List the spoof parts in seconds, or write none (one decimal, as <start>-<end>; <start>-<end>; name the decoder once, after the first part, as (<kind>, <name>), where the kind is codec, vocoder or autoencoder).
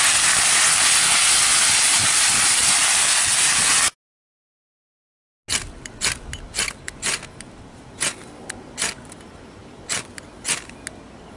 none